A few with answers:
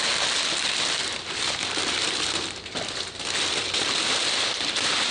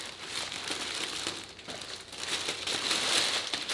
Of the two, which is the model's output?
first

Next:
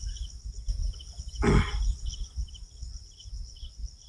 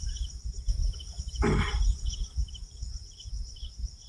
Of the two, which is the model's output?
second